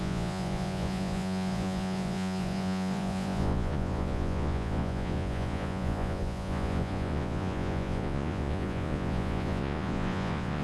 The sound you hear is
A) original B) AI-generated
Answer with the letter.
B